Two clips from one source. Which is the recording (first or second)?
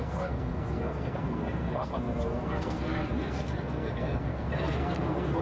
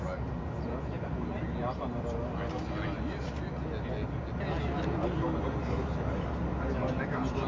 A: second